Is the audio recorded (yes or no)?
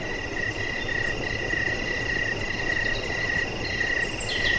yes